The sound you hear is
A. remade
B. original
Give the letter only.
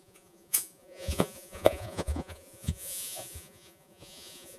A